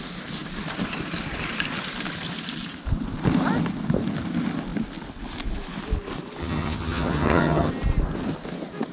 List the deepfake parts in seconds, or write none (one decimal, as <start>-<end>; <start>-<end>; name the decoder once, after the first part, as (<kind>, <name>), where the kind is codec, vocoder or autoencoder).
6.4-7.7 (vocoder, HiFi-GAN)